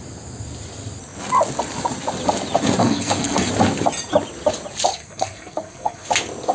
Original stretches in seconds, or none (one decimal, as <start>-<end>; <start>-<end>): 0.0-2.8; 3.5-4.9; 6.1-6.5